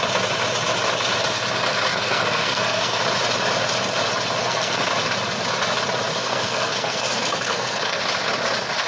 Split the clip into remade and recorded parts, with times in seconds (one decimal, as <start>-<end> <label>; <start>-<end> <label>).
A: 0.0-1.9 recorded; 1.9-3.0 remade; 3.0-4.4 recorded; 4.4-4.9 remade; 4.9-6.1 recorded; 6.1-8.0 remade; 8.0-8.9 recorded